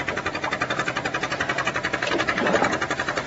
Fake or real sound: real